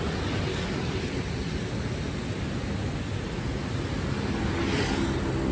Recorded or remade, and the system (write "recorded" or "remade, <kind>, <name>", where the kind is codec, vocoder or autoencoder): recorded